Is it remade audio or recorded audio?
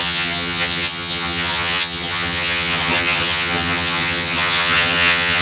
remade